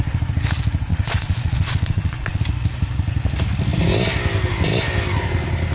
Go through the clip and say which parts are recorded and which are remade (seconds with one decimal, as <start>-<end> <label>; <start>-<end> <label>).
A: 0.0-0.9 recorded; 0.9-2.4 remade; 2.4-5.7 recorded

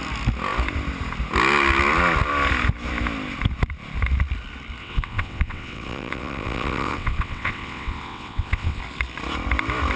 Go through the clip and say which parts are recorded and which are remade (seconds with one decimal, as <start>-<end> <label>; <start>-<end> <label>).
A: 0.0-4.8 recorded; 4.8-8.8 remade; 8.8-10.0 recorded

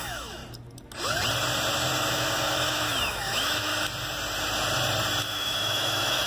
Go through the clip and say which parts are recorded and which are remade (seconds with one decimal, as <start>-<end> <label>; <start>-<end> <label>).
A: 0.0-0.4 remade; 0.4-2.1 recorded; 2.1-3.7 remade; 3.7-5.2 recorded; 5.2-6.3 remade

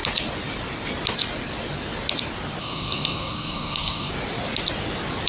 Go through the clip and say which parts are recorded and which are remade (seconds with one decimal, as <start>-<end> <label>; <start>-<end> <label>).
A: 0.0-2.6 recorded; 2.6-4.1 remade; 4.1-5.3 recorded

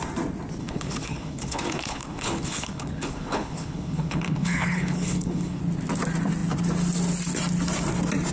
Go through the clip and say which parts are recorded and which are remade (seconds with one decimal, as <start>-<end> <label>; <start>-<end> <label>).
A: 0.0-0.6 recorded; 0.6-5.6 remade; 5.6-8.3 recorded